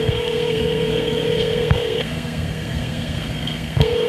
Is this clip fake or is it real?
fake